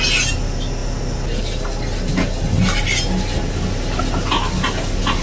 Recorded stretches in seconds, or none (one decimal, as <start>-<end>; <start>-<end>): 0.0-5.2